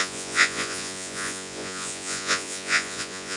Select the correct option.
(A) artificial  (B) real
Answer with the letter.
A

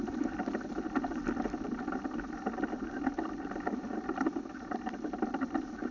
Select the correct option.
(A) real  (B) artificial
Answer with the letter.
A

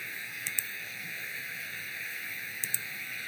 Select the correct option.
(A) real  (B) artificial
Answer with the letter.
B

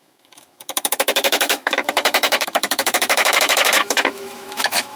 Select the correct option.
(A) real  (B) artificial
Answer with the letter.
B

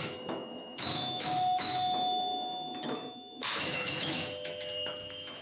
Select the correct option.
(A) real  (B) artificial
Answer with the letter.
B